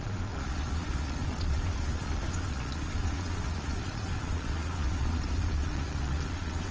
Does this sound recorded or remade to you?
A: remade